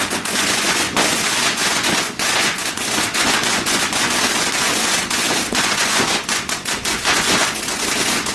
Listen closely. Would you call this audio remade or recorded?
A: remade